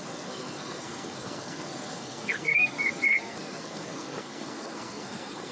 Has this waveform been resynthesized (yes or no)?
yes